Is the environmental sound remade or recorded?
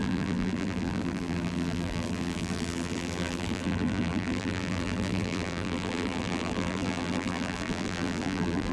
remade